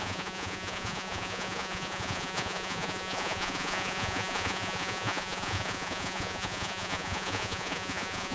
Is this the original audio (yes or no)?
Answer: no